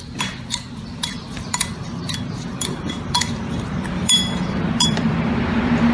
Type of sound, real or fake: fake